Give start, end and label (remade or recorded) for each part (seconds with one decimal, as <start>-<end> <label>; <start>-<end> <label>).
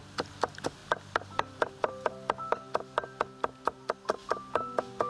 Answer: 0.0-5.1 recorded